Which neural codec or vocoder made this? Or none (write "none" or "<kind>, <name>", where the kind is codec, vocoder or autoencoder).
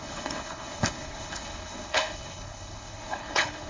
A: codec, HILCodec